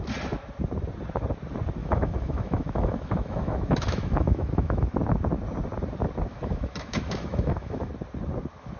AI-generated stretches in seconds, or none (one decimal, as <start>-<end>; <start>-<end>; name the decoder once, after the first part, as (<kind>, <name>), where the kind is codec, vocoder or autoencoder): 1.8-4.9 (autoencoder, DAC-VAE); 6.3-7.9